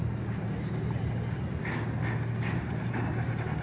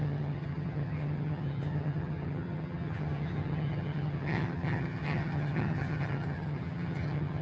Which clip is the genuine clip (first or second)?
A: first